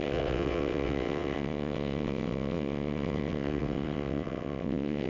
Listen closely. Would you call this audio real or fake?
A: fake